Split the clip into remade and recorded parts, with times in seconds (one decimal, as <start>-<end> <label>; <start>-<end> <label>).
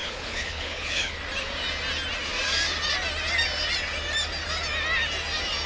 0.0-1.2 remade; 1.2-5.7 recorded